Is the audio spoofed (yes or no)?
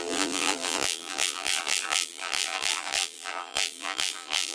yes